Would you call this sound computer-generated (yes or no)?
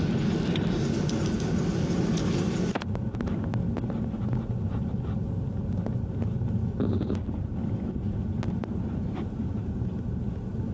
no